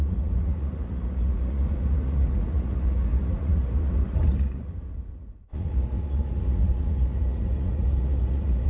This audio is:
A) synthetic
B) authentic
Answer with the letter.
A